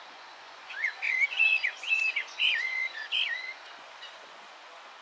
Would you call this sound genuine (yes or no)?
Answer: no